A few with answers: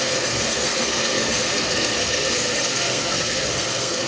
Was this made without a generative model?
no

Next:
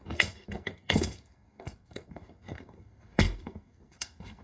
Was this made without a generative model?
no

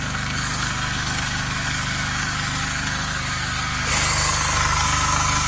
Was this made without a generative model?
no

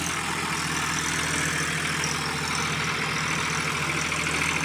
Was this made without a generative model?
yes